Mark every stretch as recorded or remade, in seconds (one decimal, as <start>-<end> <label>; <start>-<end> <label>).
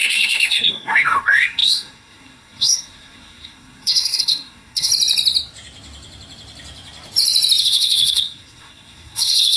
0.0-4.9 remade; 4.9-7.6 recorded; 7.6-9.6 remade